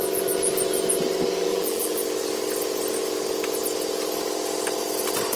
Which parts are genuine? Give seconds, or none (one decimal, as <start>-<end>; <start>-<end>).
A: 0.0-1.5; 2.0-5.4